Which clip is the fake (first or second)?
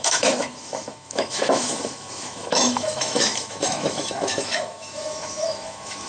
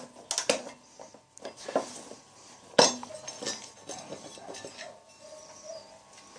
first